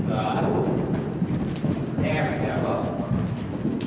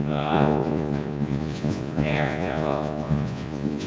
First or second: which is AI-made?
second